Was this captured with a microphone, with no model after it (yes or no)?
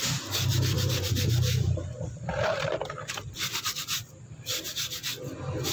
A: yes